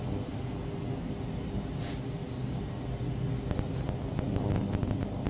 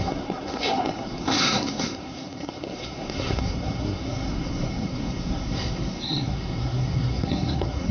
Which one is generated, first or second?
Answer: second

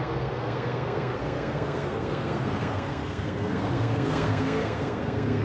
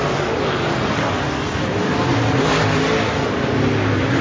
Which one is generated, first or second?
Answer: first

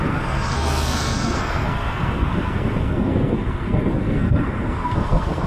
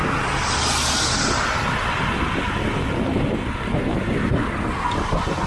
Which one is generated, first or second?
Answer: first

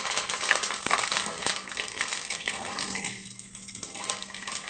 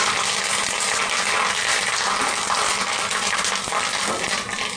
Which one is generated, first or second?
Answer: first